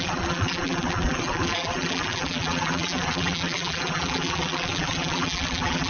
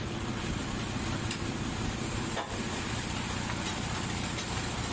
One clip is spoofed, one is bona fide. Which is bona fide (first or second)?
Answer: second